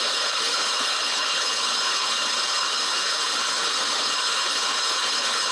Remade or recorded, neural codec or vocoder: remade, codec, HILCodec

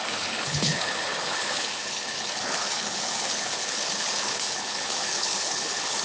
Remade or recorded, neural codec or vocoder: remade, codec, HILCodec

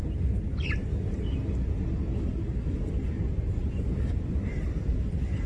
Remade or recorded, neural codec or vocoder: recorded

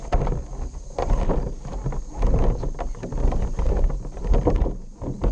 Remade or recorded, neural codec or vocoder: recorded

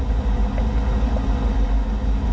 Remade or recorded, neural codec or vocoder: recorded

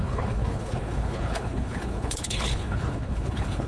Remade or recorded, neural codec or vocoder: remade, codec, HILCodec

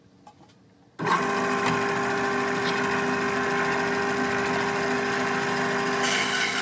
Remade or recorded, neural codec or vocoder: recorded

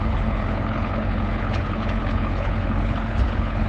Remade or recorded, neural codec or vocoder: remade, codec, HILCodec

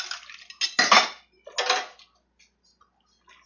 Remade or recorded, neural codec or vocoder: recorded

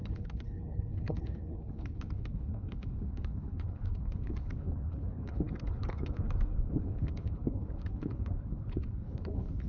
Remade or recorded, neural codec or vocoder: remade, codec, HILCodec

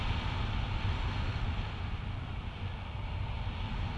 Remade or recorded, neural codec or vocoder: recorded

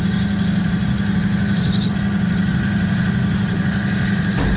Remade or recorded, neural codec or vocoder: recorded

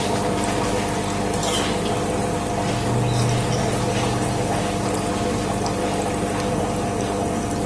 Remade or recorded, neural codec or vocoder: recorded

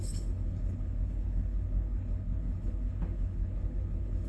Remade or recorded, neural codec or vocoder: remade, codec, HILCodec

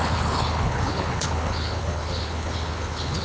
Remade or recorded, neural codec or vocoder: remade, codec, HILCodec